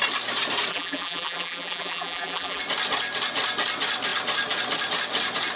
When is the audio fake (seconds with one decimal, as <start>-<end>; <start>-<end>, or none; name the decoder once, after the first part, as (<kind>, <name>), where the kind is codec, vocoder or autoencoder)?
0.7-2.6 (vocoder, BigVGAN v2)